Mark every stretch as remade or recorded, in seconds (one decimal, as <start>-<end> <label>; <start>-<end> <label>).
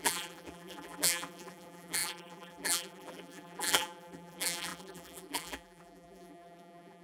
0.0-7.0 remade